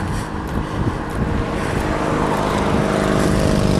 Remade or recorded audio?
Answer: recorded